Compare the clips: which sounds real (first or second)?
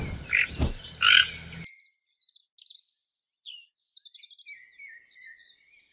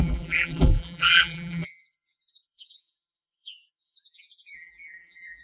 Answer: first